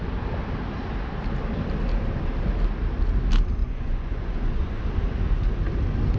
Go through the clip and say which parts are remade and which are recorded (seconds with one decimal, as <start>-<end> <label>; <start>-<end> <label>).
0.0-3.6 recorded; 3.6-4.8 remade; 4.8-6.2 recorded